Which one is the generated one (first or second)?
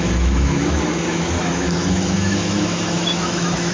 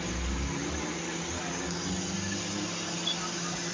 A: first